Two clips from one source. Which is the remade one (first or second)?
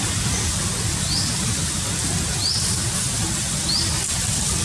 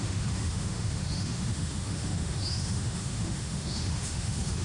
second